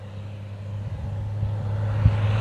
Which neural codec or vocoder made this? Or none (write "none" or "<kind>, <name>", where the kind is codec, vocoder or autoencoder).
none